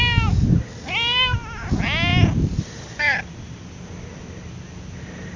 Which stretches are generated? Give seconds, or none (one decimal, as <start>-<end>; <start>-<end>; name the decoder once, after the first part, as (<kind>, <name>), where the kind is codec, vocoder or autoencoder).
none